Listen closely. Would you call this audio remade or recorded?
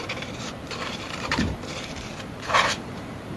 remade